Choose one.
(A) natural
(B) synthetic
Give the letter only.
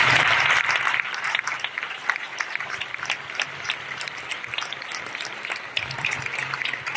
B